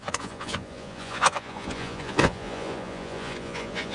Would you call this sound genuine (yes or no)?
no